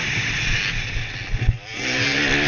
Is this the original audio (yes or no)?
yes